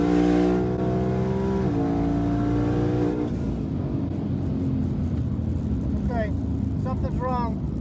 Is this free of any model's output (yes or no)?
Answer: yes